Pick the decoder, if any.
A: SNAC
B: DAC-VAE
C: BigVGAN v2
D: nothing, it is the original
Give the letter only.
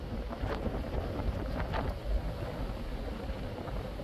D